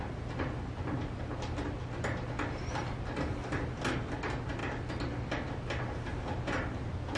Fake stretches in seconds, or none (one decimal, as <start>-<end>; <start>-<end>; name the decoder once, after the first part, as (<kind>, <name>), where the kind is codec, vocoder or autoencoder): none